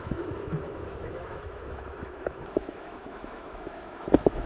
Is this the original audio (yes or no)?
no